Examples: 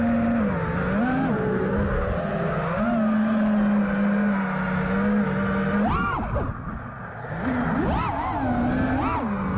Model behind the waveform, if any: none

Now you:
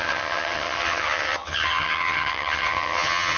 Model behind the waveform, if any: vocoder, HiFi-GAN